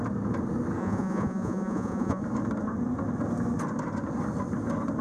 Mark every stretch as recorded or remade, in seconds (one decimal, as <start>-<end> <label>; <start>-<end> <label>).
0.0-0.8 recorded; 0.8-2.2 remade; 2.2-5.0 recorded